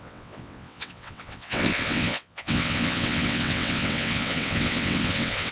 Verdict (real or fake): fake